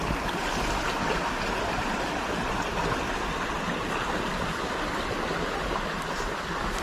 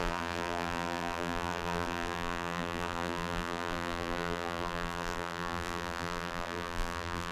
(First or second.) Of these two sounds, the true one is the first